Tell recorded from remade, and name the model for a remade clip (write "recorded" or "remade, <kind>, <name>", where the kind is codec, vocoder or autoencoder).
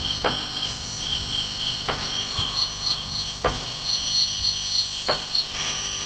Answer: recorded